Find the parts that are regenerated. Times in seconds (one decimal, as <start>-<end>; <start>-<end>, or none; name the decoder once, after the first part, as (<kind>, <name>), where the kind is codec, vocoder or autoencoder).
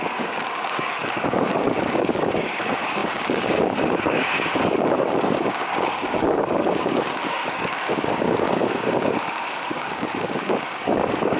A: 0.0-11.4 (codec, DAC)